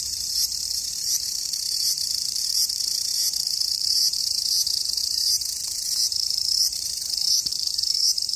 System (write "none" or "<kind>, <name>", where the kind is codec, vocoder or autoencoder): vocoder, BigVGAN v2